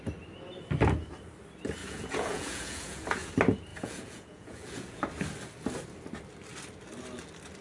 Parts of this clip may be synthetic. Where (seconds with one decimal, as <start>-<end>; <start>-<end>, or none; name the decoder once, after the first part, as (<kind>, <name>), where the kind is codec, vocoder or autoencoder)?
1.8-3.3 (vocoder, Vocos); 3.7-5.0

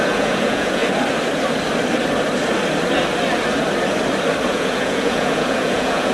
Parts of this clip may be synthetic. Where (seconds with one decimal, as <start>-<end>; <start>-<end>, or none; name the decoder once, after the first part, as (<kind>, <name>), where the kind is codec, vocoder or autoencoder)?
0.0-0.8 (vocoder, Vocos); 4.5-6.1

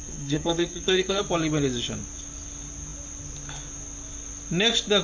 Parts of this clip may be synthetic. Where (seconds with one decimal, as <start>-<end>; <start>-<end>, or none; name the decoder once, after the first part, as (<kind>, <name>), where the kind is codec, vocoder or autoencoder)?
0.0-1.2 (codec, SNAC)

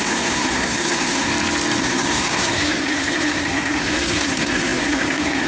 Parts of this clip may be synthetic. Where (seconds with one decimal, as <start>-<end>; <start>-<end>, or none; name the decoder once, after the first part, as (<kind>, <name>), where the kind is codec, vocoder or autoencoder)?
0.0-1.3 (codec, SNAC); 1.8-5.5

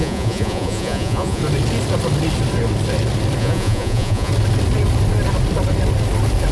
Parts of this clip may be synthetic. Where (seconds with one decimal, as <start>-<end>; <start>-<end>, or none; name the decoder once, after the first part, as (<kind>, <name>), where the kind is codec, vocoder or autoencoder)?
0.0-1.4 (vocoder, Vocos); 3.4-4.3

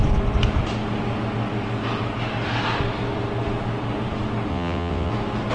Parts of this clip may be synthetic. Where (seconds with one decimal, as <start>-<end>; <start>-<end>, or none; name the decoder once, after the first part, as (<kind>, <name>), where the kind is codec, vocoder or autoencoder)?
4.5-5.1 (vocoder, WaveNeXt)

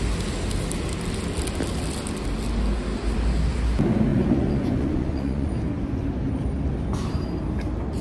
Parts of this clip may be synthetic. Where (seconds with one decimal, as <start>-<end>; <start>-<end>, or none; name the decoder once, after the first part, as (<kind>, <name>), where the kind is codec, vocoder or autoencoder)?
4.1-5.5 (vocoder, Vocos)